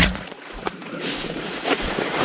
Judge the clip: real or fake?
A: fake